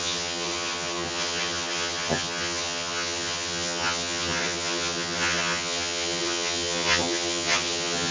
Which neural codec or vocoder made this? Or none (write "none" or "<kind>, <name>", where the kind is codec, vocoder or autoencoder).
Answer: vocoder, HiFi-GAN